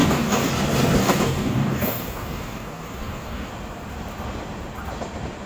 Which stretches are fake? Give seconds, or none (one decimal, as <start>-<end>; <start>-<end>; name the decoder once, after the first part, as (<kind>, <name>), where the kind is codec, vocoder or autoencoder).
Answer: 0.0-0.5 (codec, DAC); 1.0-3.5